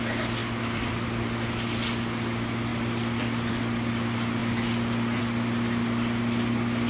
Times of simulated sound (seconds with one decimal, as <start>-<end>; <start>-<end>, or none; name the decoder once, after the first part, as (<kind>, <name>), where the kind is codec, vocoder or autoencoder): 0.4-1.5 (vocoder, BigVGAN v2); 2.7-3.5